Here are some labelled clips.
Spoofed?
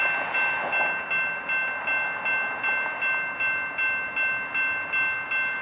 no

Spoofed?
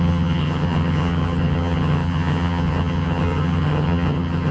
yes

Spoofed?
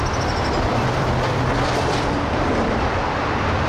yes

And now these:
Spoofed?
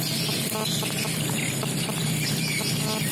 no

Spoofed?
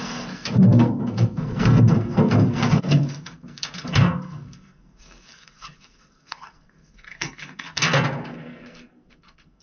yes